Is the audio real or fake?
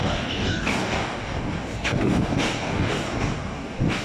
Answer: fake